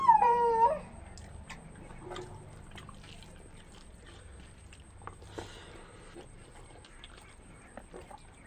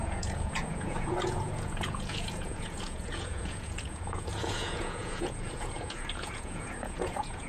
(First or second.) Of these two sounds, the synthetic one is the second